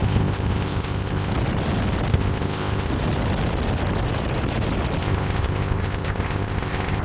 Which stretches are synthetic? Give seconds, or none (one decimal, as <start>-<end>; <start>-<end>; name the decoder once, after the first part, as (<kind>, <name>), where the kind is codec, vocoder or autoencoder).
0.0-1.3 (codec, ZipCodec); 2.1-2.9; 5.0-7.0